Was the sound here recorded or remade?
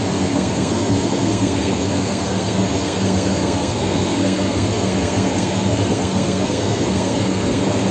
remade